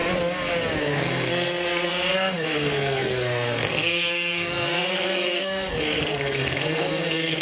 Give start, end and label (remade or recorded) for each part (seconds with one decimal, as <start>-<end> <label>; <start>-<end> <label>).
0.0-0.8 recorded; 0.8-7.4 remade